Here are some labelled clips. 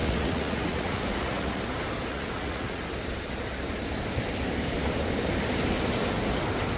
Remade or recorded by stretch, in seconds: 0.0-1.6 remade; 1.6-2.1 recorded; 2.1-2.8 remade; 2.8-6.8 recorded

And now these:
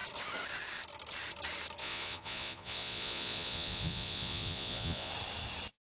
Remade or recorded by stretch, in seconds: 0.0-1.8 recorded; 1.8-5.1 remade; 5.1-5.9 recorded